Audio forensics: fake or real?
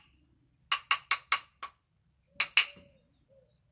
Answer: real